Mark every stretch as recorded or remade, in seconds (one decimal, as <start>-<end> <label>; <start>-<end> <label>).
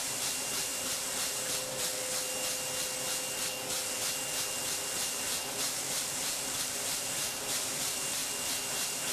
0.0-1.9 remade; 1.9-5.0 recorded; 5.0-8.2 remade; 8.2-8.7 recorded; 8.7-9.1 remade